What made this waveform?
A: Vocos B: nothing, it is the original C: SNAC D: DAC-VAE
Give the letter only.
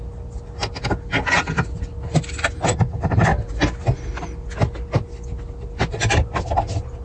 B